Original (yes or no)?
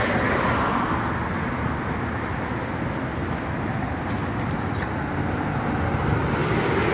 yes